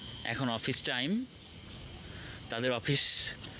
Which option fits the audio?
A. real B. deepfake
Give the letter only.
B